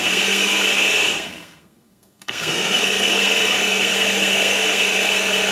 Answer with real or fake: fake